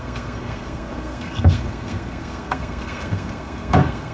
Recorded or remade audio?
remade